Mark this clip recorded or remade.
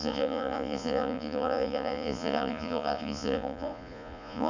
remade